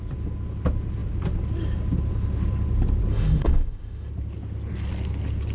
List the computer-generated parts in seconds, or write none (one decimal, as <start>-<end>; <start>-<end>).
3.1-4.1